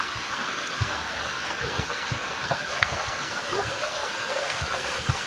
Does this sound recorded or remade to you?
remade